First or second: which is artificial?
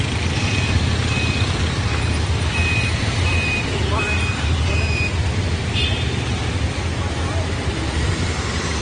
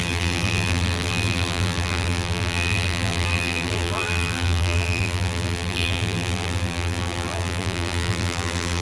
second